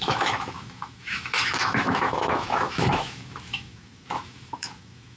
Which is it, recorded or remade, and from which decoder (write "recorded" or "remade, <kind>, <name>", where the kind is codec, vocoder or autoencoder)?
remade, autoencoder, DAC-VAE